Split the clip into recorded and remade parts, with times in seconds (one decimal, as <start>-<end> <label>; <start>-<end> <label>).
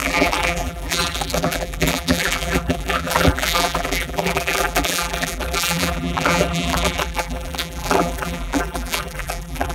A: 0.0-9.7 remade